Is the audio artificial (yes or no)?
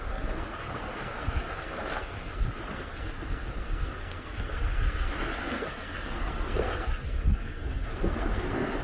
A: yes